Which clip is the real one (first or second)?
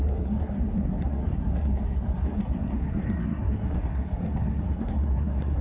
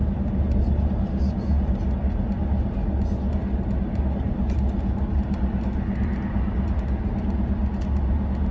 second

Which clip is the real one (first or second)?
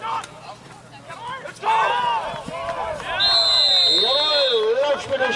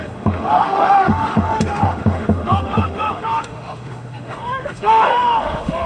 first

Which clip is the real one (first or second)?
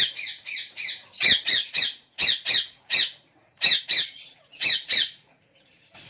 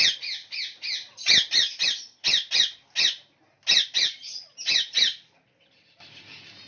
second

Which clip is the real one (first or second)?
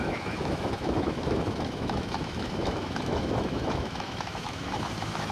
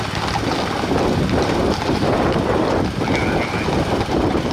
second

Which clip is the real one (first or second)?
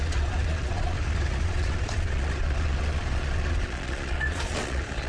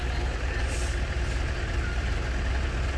second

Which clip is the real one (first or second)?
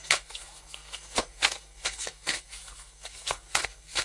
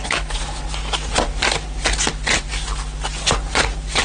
second